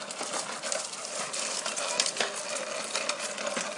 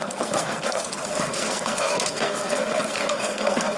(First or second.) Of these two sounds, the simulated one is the second